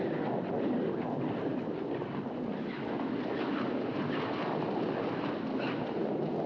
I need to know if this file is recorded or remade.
recorded